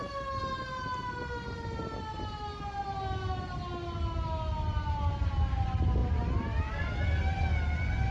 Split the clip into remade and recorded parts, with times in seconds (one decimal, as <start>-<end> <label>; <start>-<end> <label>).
0.0-8.1 recorded